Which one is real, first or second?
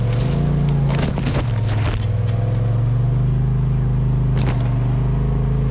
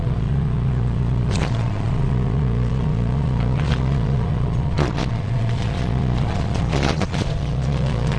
first